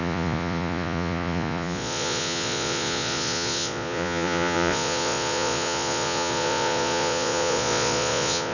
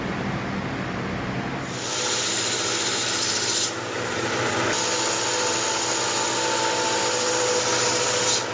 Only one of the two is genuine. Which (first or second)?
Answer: second